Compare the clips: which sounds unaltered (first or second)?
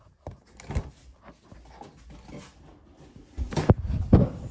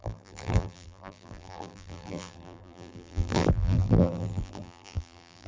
first